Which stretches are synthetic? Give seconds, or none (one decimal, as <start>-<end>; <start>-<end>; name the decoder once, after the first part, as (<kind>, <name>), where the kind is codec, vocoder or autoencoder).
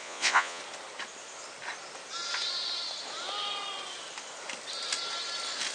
0.0-0.6 (vocoder, Vocos)